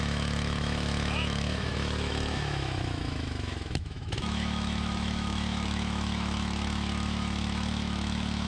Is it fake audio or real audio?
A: fake